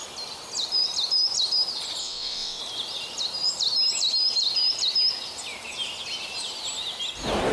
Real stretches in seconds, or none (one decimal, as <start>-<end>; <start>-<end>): 0.0-2.0; 2.6-7.5